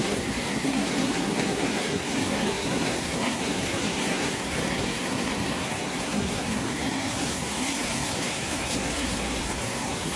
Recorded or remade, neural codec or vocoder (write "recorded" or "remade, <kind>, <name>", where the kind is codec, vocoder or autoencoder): remade, codec, SNAC